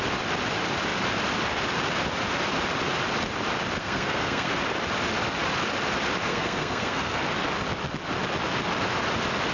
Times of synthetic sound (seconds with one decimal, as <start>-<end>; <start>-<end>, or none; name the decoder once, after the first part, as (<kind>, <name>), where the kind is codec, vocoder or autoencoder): 3.8-4.5 (codec, SNAC); 6.3-7.2